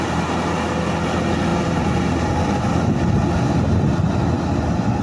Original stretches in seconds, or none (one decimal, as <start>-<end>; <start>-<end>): 0.0-5.0